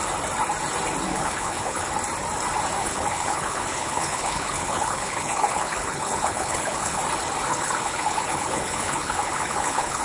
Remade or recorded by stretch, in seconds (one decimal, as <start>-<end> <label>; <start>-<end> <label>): 0.0-1.1 recorded; 1.1-1.9 remade; 1.9-2.8 recorded; 2.8-7.0 remade; 7.0-7.5 recorded; 7.5-10.0 remade